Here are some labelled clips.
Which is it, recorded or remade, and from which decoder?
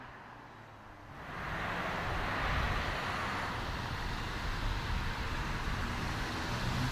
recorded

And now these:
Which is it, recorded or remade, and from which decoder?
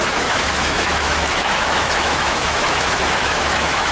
remade, autoencoder, DAC-VAE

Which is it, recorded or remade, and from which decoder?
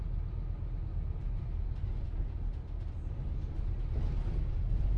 recorded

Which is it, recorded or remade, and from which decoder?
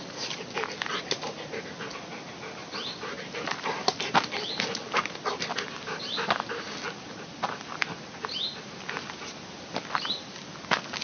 recorded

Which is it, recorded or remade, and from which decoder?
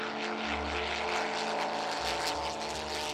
recorded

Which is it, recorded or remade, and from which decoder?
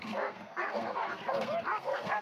remade, codec, SNAC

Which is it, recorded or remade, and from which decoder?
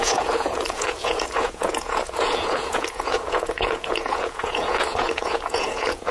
remade, vocoder, Vocos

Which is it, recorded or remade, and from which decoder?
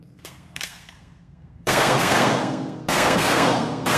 remade, codec, SNAC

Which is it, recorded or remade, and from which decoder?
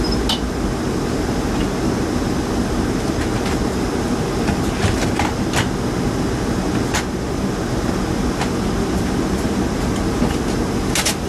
recorded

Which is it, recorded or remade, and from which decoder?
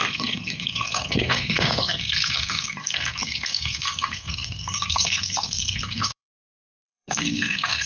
remade, codec, SNAC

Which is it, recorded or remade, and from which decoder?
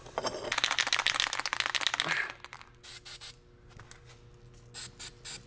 recorded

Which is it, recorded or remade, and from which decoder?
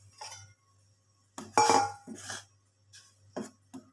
recorded